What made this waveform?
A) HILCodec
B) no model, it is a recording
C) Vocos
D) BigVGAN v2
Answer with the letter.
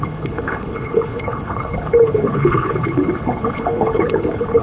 A